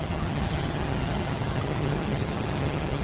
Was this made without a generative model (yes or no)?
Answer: no